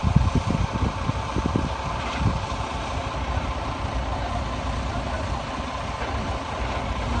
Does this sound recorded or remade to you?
recorded